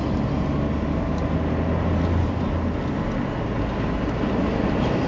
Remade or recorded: recorded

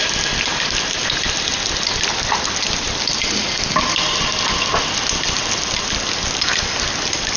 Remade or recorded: recorded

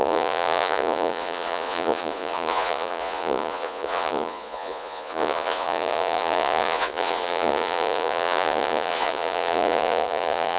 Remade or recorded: remade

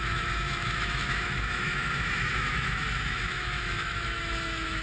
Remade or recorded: remade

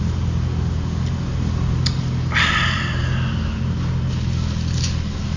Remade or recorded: recorded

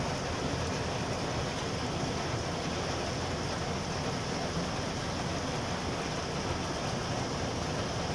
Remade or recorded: recorded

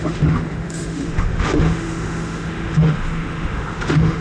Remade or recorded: remade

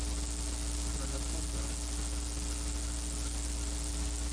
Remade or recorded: recorded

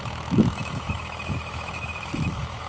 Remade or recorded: remade